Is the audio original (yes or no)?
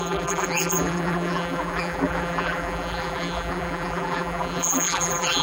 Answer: no